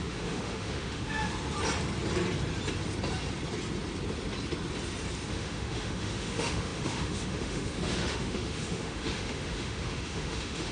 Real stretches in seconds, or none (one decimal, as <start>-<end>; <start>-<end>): 1.3-5.3